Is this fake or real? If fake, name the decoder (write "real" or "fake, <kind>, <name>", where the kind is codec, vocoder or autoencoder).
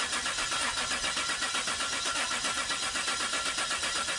fake, vocoder, BigVGAN v2